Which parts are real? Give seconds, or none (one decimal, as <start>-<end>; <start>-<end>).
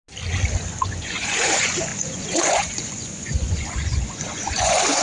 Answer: 0.0-0.7